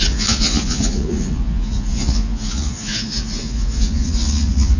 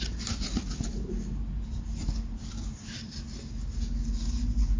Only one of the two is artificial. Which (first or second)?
first